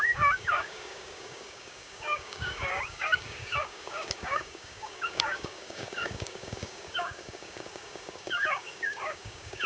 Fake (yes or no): yes